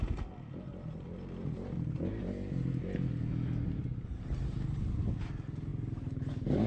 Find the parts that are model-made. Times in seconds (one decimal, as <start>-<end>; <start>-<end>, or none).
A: none